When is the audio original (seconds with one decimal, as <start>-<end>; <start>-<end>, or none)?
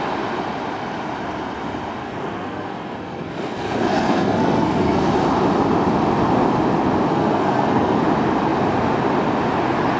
0.0-2.0; 5.1-7.1; 8.0-10.0